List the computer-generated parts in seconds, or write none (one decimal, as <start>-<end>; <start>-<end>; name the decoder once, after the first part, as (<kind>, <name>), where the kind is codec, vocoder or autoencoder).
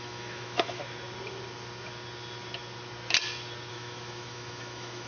0.0-0.8 (autoencoder, DAC-VAE); 3.7-5.1